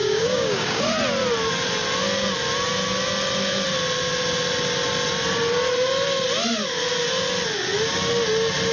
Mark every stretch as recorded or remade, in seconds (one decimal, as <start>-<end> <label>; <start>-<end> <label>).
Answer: 0.0-0.8 remade; 0.8-8.7 recorded

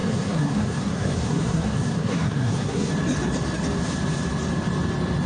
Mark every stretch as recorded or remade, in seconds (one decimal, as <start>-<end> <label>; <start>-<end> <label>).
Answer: 0.0-2.9 remade; 2.9-5.3 recorded